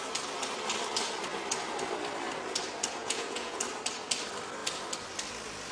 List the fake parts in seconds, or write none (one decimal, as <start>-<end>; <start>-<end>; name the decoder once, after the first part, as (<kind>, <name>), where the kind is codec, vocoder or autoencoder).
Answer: 3.0-3.6 (vocoder, Vocos)